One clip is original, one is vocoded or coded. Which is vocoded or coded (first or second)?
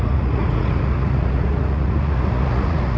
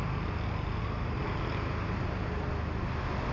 first